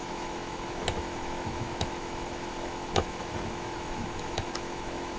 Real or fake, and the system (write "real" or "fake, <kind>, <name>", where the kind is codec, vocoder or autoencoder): fake, autoencoder, DAC-VAE